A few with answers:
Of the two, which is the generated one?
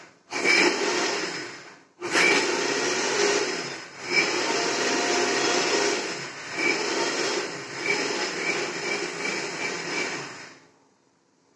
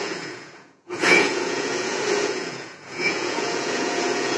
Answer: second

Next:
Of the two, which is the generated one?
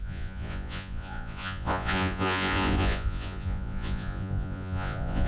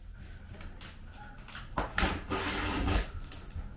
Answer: first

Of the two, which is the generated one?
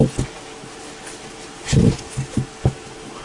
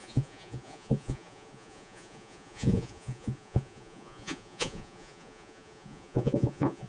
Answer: second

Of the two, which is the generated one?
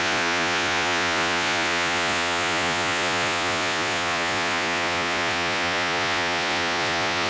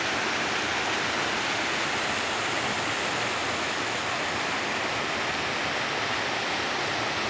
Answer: first